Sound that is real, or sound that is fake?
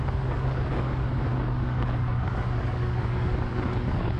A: fake